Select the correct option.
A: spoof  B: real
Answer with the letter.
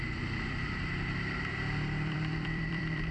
A